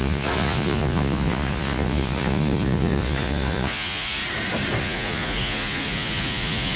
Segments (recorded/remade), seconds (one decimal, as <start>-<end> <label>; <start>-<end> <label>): 0.0-4.2 remade; 4.2-4.8 recorded; 4.8-6.8 remade